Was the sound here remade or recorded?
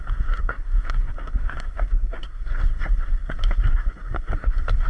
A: remade